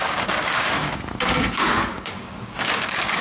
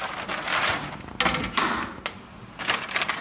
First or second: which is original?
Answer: second